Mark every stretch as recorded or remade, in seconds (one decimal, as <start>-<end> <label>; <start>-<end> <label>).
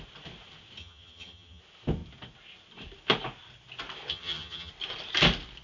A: 0.0-0.8 recorded; 0.8-1.6 remade; 1.6-4.1 recorded; 4.1-4.7 remade; 4.7-5.6 recorded